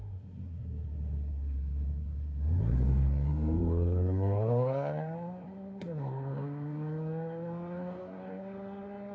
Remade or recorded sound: remade